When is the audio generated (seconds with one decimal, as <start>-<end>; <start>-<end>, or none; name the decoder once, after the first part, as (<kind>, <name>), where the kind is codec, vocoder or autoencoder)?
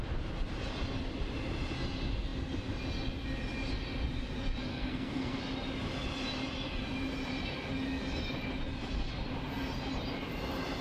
4.7-5.4 (codec, SNAC)